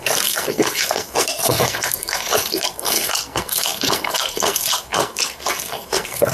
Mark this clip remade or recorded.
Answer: remade